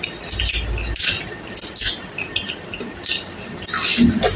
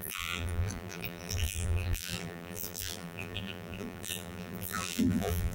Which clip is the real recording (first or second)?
first